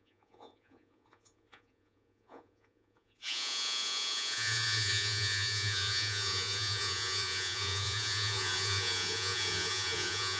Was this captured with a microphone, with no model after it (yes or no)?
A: no